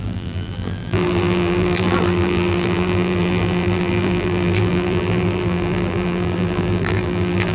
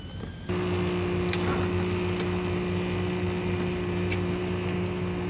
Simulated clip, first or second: first